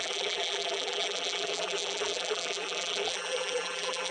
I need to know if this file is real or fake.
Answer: fake